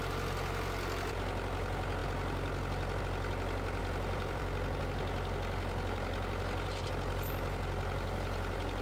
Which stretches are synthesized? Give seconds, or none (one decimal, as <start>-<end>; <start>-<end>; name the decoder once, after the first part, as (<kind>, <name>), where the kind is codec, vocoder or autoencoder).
3.8-4.8 (vocoder, BigVGAN v2)

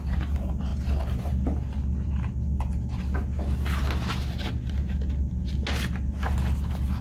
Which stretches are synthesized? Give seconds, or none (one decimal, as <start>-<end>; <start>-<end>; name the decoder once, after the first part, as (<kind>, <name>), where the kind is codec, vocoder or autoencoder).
none

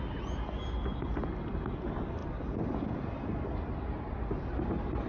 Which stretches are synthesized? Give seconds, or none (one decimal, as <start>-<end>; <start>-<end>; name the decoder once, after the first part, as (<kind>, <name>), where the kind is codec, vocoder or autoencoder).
none

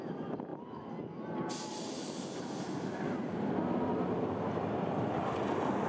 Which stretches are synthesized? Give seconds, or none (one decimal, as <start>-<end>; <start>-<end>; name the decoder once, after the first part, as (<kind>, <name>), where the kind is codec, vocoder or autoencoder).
none